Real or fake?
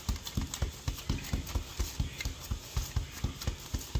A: real